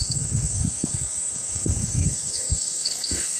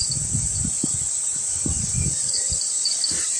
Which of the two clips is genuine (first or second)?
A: second